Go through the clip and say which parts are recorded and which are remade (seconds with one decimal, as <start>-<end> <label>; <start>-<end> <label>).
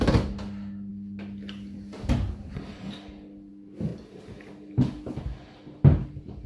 0.0-6.5 recorded